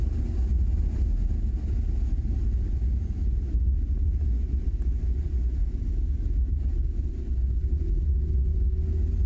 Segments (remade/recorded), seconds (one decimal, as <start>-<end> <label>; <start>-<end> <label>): 0.0-9.3 recorded

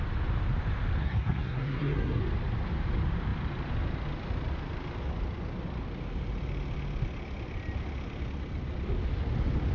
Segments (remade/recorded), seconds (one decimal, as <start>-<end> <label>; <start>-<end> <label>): 0.0-1.0 recorded; 1.0-2.2 remade; 2.2-9.7 recorded

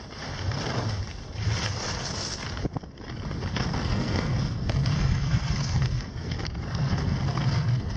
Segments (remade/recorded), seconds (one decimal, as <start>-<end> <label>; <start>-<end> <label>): 0.0-3.5 recorded; 3.5-8.0 remade

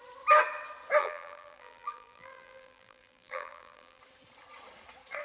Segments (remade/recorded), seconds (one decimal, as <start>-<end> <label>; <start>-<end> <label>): 0.0-1.0 recorded; 1.0-4.0 remade; 4.0-5.2 recorded

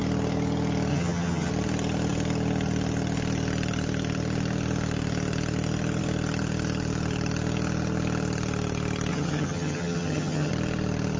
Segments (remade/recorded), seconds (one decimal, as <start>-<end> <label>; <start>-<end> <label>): 0.0-0.9 recorded; 0.9-1.5 remade; 1.5-9.1 recorded; 9.1-10.5 remade; 10.5-11.2 recorded

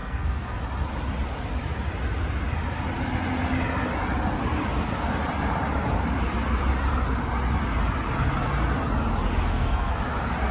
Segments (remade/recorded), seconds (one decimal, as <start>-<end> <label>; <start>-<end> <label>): 0.0-0.6 remade; 0.6-9.5 recorded; 9.5-10.0 remade; 10.0-10.5 recorded

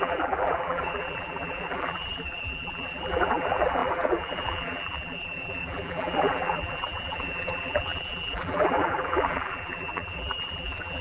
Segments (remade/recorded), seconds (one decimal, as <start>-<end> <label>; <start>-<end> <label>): 0.0-11.0 remade